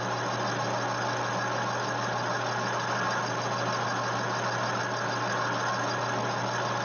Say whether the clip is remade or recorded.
recorded